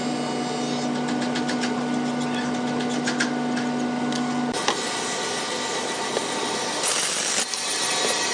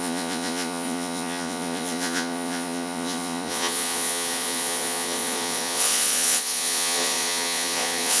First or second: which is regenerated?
second